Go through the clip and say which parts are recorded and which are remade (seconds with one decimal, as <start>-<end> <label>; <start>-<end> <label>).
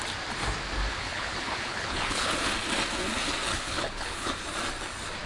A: 0.0-0.9 recorded; 0.9-2.5 remade; 2.5-3.5 recorded; 3.5-4.3 remade; 4.3-5.3 recorded